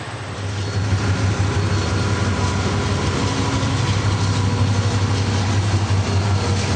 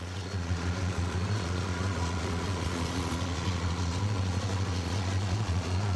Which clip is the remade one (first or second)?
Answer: second